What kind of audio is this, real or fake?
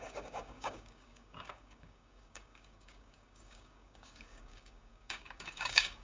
fake